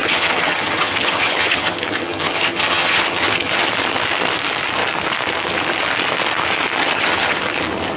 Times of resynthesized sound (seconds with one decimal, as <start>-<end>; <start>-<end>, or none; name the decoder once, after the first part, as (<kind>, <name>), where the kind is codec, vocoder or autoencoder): 0.0-3.7 (vocoder, HiFi-GAN); 6.8-7.4